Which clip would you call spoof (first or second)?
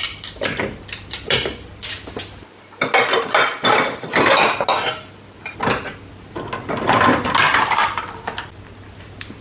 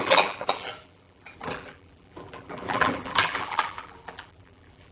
second